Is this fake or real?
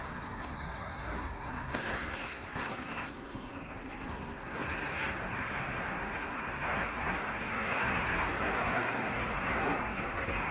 fake